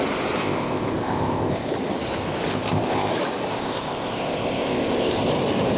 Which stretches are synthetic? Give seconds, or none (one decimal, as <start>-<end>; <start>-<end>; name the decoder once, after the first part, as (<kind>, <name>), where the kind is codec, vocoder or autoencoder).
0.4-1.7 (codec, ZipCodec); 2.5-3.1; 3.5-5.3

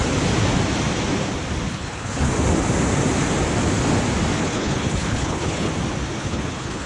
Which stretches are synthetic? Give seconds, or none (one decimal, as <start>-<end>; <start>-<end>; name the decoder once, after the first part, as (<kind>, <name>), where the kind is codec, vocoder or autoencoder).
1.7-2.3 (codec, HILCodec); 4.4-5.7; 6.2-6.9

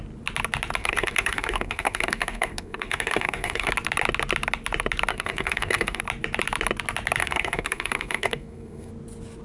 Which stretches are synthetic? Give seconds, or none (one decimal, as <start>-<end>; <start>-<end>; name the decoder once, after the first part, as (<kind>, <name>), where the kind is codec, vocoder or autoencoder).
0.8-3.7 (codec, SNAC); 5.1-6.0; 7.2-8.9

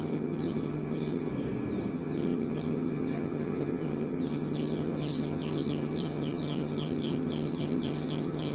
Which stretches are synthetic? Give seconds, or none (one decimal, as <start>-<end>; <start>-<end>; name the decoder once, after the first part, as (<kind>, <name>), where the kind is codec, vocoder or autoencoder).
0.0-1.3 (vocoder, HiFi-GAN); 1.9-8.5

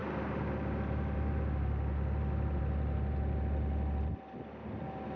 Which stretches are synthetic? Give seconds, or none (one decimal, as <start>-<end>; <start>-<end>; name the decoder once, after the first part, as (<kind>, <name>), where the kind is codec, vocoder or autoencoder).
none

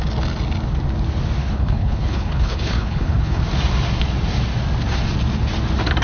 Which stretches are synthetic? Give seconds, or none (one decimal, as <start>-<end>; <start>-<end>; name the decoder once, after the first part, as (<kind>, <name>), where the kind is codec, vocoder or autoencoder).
1.4-3.4 (codec, HILCodec)

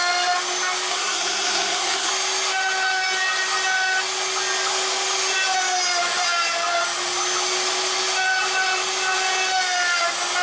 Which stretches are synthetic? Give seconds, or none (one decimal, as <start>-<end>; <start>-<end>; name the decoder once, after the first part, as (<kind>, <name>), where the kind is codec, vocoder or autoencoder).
0.9-2.1 (codec, SNAC)